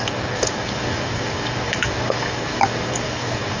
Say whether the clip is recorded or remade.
remade